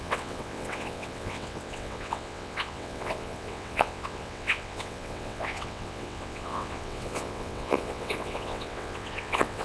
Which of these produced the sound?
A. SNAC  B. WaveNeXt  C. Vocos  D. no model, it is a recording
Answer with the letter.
B